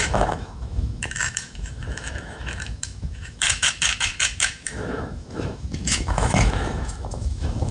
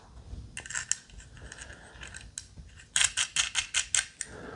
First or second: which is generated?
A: first